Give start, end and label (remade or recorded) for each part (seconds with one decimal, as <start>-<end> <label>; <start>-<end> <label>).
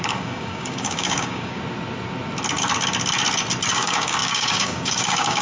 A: 0.0-1.6 remade; 1.6-3.7 recorded; 3.7-5.4 remade